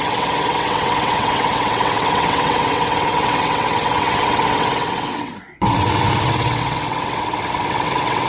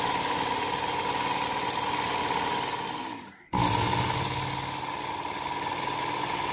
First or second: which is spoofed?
first